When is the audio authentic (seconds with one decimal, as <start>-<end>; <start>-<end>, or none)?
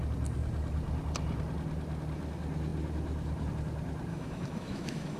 0.0-4.1